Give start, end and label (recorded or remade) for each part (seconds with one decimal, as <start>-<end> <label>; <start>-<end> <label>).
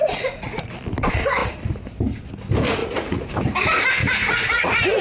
0.0-0.7 remade; 0.7-2.8 recorded; 2.8-3.3 remade; 3.3-4.0 recorded; 4.0-5.0 remade